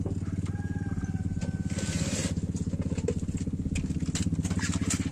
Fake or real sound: real